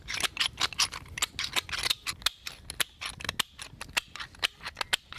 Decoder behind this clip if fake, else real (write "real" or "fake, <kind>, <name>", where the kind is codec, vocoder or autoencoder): real